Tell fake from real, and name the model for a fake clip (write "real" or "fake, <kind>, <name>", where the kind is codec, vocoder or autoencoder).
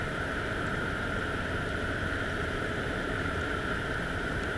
fake, vocoder, BigVGAN v2